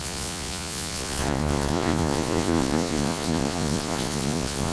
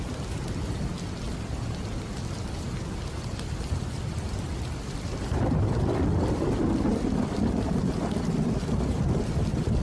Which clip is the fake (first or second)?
first